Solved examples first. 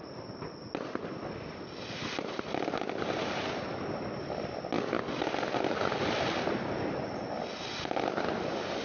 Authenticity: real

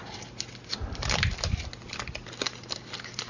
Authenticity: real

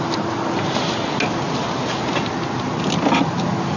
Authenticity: real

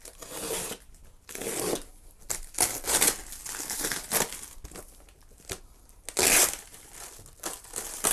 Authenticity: real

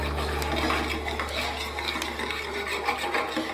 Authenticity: real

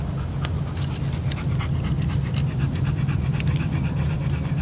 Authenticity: real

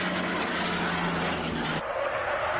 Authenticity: real